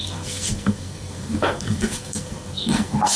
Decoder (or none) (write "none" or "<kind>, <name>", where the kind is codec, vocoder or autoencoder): codec, SNAC